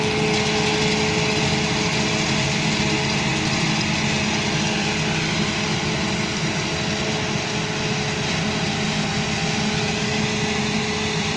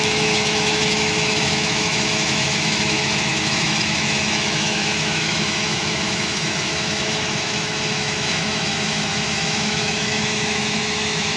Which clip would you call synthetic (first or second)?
second